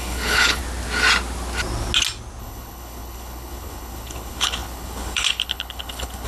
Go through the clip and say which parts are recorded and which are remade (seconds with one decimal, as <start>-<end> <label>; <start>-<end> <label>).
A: 0.0-0.6 remade; 0.6-2.4 recorded; 2.4-6.3 remade